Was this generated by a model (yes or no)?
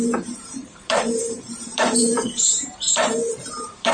yes